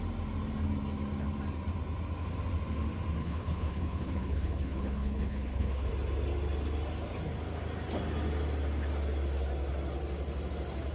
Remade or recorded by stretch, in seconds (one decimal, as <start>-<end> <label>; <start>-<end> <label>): 0.0-3.2 recorded; 3.2-5.9 remade; 5.9-10.9 recorded